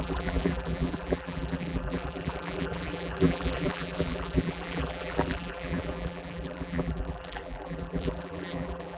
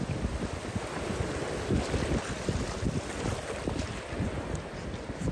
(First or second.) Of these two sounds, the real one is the second